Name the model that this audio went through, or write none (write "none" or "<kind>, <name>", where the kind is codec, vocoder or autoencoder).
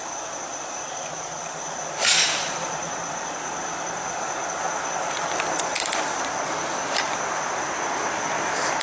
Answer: none